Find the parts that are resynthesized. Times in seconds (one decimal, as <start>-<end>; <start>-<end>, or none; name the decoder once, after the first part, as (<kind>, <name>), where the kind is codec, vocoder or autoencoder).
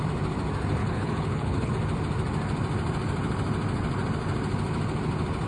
0.8-1.7 (codec, HILCodec)